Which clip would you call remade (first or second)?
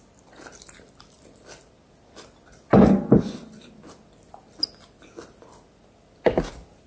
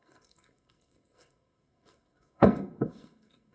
second